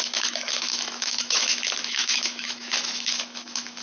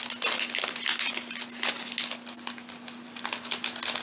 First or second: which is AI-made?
first